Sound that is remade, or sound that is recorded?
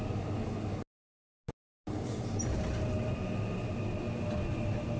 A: recorded